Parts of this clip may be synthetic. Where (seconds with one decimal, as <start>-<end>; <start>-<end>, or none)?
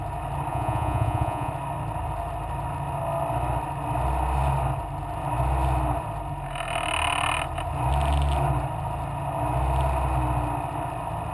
0.5-1.5